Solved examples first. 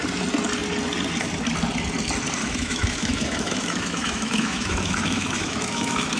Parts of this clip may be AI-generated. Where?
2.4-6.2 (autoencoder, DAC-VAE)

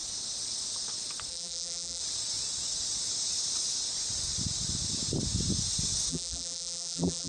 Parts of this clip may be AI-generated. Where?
1.3-2.0 (vocoder, BigVGAN v2); 6.1-7.3

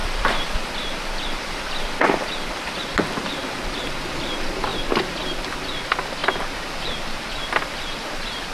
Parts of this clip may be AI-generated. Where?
0.0-3.8 (vocoder, BigVGAN v2)

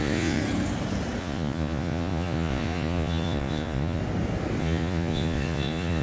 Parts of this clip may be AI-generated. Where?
0.0-0.4 (vocoder, Vocos); 1.2-4.0; 4.6-6.0

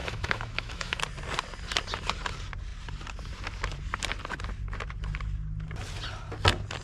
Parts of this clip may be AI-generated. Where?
0.0-1.0 (autoencoder, DAC-VAE)